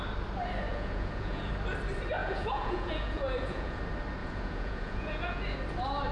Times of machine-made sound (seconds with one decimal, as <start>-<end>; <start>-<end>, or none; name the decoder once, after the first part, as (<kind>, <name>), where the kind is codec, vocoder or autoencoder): 0.7-1.5 (vocoder, Vocos); 2.2-3.8; 4.2-5.4